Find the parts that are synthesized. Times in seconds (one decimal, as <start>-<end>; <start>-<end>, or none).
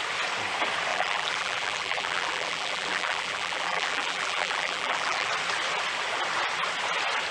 0.9-5.3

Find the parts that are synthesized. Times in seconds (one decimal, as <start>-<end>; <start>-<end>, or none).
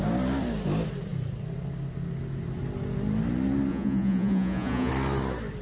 3.7-4.9